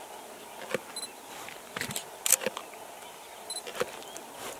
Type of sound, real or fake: real